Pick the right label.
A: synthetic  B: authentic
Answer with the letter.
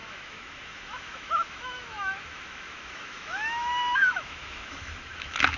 A